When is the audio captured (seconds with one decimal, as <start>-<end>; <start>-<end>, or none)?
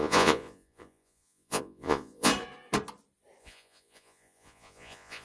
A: 2.3-3.4